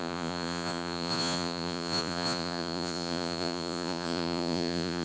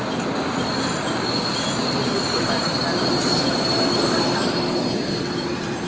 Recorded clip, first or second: second